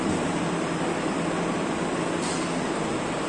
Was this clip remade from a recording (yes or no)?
no